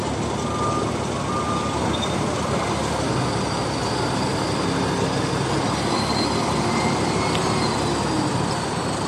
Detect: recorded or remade recorded